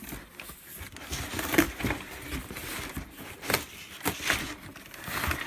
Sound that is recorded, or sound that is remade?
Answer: recorded